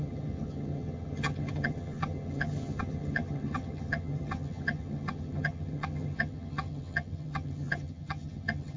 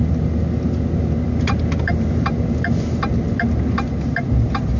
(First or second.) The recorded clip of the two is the second